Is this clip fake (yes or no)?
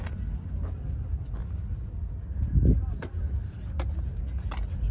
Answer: no